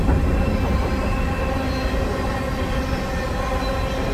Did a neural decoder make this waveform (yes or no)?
no